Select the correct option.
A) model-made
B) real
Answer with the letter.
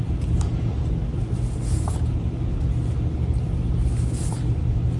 B